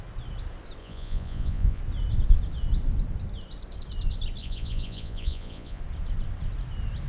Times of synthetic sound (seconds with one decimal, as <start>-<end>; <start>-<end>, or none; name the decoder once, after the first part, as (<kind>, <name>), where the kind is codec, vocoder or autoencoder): 0.8-1.8 (vocoder, Vocos); 4.4-5.8